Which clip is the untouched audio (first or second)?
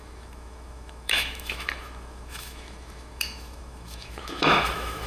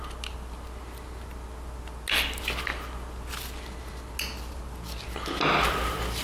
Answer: second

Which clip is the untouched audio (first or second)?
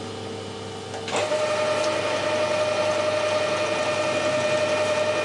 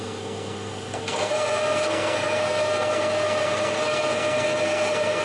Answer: first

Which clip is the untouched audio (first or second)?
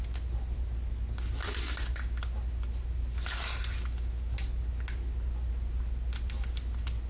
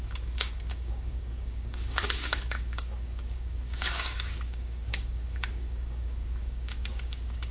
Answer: first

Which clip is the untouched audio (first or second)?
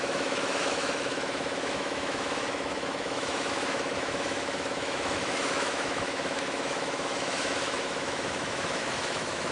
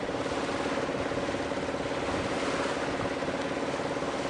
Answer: second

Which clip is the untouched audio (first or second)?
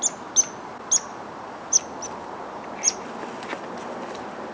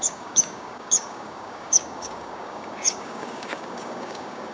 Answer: first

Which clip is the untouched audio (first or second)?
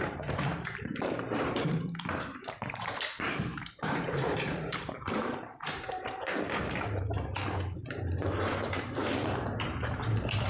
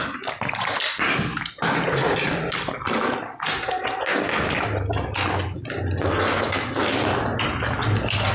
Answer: second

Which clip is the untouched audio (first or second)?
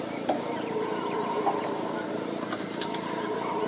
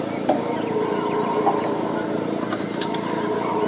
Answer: second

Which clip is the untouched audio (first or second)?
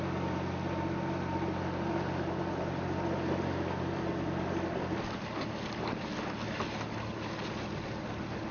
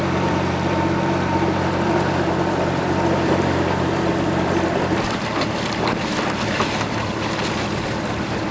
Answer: first